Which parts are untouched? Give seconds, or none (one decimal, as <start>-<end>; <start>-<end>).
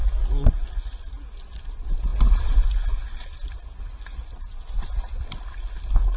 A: 0.0-6.2